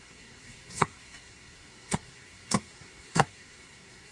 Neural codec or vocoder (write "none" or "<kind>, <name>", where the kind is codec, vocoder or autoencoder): codec, SNAC